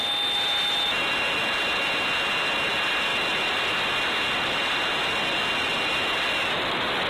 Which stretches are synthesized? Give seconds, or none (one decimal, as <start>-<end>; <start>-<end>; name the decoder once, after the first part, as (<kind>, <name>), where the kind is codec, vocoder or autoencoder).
none